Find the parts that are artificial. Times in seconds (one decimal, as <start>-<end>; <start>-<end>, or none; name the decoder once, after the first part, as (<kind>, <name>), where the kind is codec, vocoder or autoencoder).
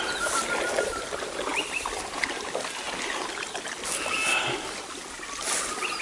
none